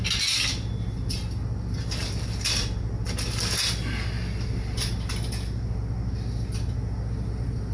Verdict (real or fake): real